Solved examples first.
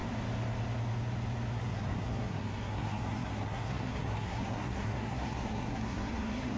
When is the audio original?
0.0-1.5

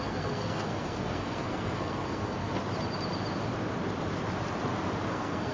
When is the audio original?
2.6-5.1

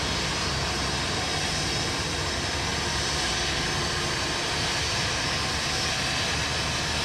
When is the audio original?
0.0-7.0

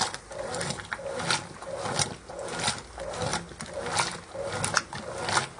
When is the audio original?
0.0-5.6

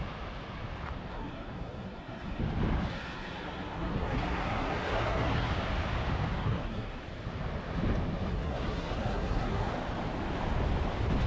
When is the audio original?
0.0-1.1; 2.4-2.9; 5.5-6.4; 7.0-8.3; 9.7-11.3

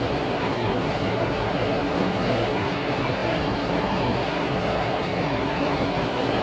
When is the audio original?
none

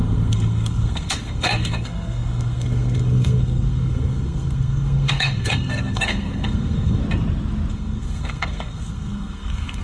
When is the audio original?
7.0-7.7